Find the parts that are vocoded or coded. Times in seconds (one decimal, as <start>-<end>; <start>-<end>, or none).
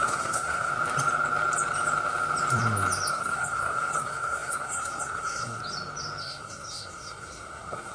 0.0-0.7; 3.1-5.6; 6.2-7.9